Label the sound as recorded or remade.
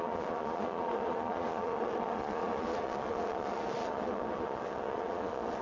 remade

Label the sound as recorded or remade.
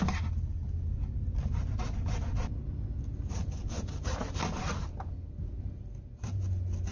recorded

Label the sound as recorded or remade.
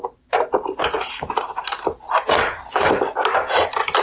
recorded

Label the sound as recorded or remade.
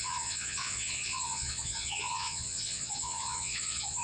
remade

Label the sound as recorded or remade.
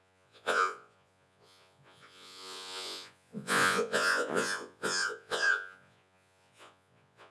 remade